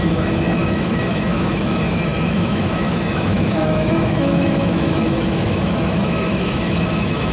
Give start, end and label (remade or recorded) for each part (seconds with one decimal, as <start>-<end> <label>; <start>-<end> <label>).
0.0-7.3 remade

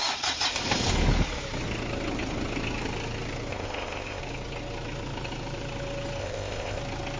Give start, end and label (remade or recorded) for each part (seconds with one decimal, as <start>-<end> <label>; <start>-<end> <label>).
0.0-3.5 recorded; 3.5-4.2 remade; 4.2-6.2 recorded; 6.2-6.8 remade; 6.8-7.2 recorded

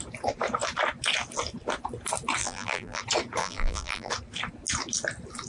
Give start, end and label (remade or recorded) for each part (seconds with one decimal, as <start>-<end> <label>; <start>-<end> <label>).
0.0-2.4 recorded; 2.4-3.0 remade; 3.0-3.4 recorded; 3.4-4.1 remade; 4.1-5.5 recorded

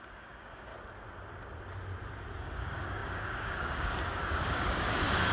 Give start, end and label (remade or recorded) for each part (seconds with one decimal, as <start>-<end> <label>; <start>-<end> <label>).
0.0-0.7 remade; 0.7-2.4 recorded; 2.4-5.3 remade

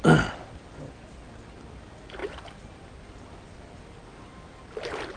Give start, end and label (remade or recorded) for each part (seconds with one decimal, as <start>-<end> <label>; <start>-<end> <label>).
0.0-2.2 recorded; 2.2-4.3 remade; 4.3-5.2 recorded

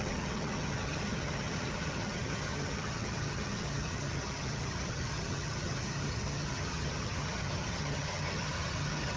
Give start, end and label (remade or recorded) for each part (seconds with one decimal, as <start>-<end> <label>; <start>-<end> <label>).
0.0-9.2 remade

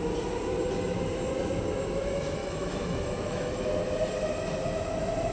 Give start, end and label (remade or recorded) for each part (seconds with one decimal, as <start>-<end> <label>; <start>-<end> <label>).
0.0-2.4 recorded; 2.4-3.8 remade; 3.8-5.3 recorded

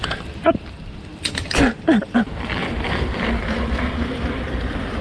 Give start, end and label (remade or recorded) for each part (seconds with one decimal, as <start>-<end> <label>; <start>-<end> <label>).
0.0-2.6 recorded; 2.6-5.0 remade